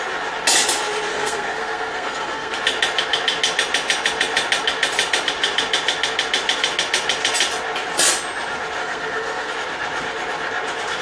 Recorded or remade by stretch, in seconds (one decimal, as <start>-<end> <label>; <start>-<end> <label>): 0.0-1.1 recorded; 1.1-2.6 remade; 2.6-8.8 recorded; 8.8-9.5 remade; 9.5-11.0 recorded